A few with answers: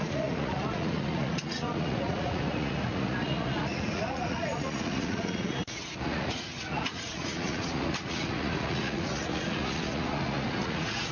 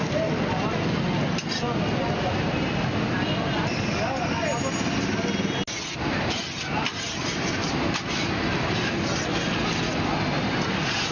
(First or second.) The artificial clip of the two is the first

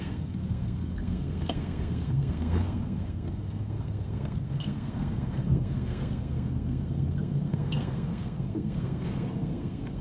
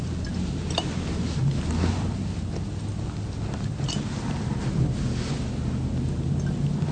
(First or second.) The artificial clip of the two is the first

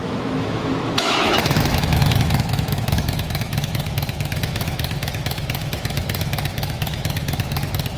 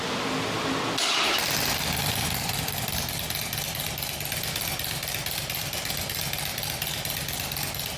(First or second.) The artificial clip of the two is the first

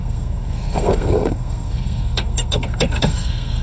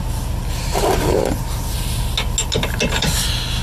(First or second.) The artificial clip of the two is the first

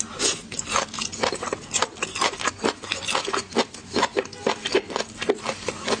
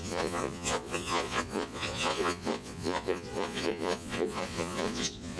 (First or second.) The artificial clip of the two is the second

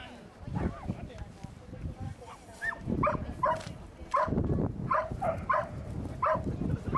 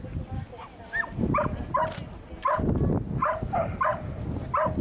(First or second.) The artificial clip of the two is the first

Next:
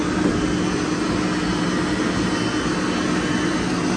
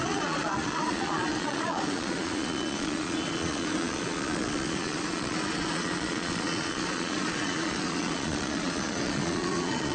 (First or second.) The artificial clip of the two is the second